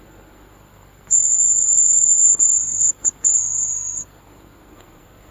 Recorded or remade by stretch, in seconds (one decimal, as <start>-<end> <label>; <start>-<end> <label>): 0.0-5.3 remade

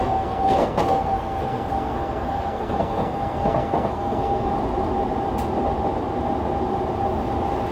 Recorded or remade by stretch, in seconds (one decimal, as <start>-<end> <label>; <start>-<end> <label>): 0.0-4.5 remade; 4.5-7.7 recorded

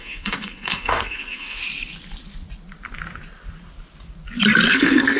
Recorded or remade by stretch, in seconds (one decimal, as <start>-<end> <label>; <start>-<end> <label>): 0.0-1.6 remade; 1.6-4.7 recorded; 4.7-5.2 remade

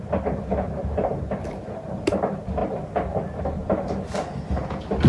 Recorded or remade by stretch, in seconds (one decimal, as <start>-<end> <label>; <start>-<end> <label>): 0.0-5.1 recorded

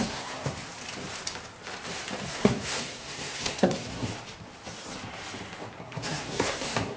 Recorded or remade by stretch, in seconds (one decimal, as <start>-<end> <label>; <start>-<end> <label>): 0.0-0.6 remade; 0.6-2.3 recorded; 2.3-4.1 remade; 4.1-5.8 recorded; 5.8-7.0 remade

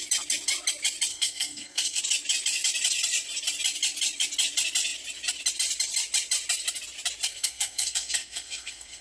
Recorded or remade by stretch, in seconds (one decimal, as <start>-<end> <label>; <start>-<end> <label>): 0.0-1.1 recorded; 1.1-2.0 remade; 2.0-7.3 recorded; 7.3-9.0 remade